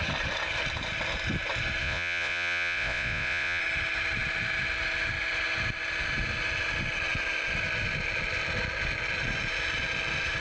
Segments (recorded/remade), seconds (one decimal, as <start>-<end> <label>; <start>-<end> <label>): 0.0-1.8 recorded; 1.8-3.6 remade; 3.6-10.4 recorded